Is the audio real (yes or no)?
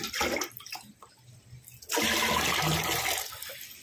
yes